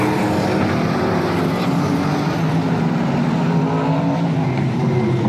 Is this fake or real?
real